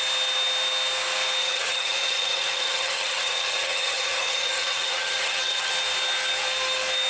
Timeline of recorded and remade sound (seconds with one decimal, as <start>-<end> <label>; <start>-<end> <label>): 0.0-1.4 recorded; 1.4-5.7 remade; 5.7-7.1 recorded